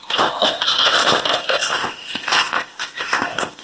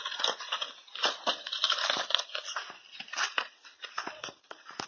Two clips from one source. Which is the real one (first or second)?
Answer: second